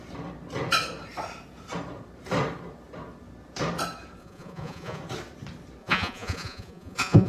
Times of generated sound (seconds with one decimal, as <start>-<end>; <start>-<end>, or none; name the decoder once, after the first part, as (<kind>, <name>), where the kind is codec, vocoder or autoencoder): 4.2-5.0 (vocoder, Vocos); 5.8-7.3